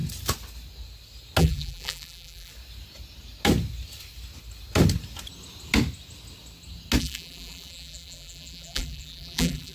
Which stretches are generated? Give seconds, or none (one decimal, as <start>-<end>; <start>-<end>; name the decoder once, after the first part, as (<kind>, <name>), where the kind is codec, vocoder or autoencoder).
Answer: 1.4-2.5 (vocoder, BigVGAN v2); 7.0-9.7